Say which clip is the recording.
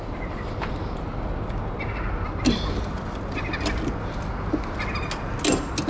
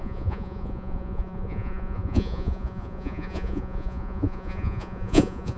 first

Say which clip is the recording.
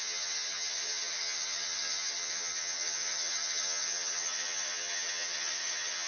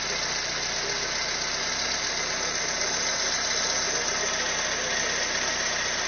second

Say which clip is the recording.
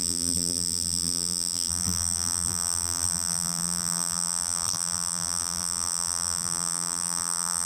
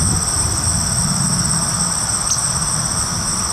second